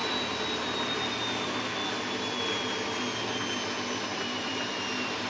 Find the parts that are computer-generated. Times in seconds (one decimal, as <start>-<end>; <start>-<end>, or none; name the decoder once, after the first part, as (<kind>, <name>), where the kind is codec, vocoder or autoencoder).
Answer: 4.1-5.3 (vocoder, BigVGAN v2)